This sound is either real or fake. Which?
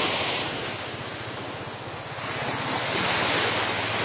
real